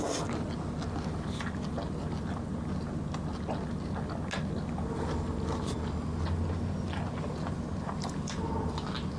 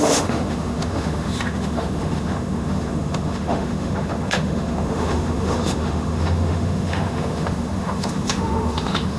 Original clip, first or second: first